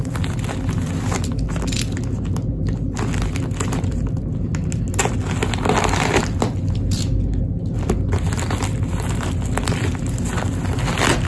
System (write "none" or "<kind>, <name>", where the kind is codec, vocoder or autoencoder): none